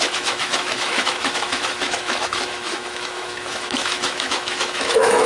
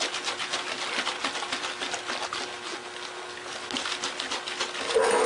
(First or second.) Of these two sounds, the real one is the second